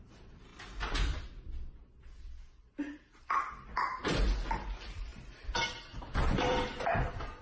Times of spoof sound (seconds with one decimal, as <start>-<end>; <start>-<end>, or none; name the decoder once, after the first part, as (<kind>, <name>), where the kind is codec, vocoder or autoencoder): 0.0-0.5 (vocoder, BigVGAN v2); 2.0-4.0; 4.5-7.4